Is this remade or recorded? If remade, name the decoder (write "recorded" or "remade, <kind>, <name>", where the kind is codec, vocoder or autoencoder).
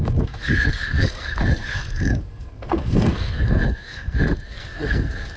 remade, codec, SNAC